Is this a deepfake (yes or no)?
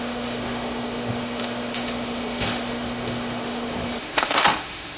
yes